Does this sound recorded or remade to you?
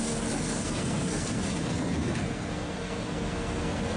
remade